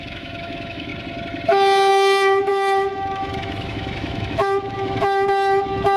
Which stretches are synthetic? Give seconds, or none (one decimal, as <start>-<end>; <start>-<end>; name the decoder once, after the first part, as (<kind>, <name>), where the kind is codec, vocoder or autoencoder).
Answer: 0.0-0.9 (autoencoder, DAC-VAE); 1.9-6.0